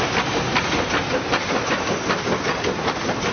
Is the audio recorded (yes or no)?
yes